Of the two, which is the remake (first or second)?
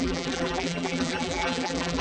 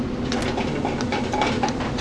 first